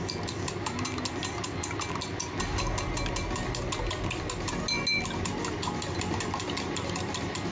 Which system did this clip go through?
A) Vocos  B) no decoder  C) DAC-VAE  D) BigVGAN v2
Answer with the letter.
B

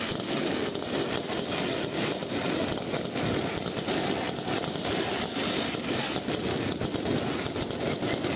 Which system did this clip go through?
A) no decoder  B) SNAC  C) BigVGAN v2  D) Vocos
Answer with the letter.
A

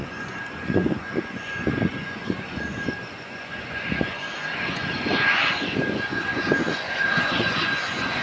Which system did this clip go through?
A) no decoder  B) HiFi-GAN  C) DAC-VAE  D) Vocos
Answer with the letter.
D